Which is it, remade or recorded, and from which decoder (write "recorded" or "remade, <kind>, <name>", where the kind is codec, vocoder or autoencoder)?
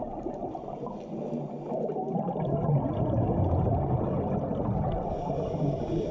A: recorded